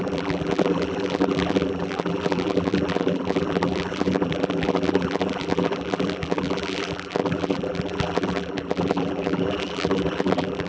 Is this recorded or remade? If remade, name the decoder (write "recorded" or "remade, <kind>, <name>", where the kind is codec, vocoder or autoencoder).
remade, vocoder, BigVGAN v2